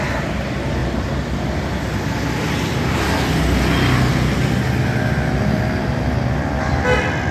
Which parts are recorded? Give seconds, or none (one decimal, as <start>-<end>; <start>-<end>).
0.0-7.3